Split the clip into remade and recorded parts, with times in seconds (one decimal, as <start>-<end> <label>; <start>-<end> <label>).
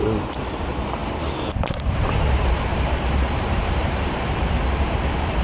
0.0-1.0 recorded; 1.0-4.2 remade; 4.2-5.4 recorded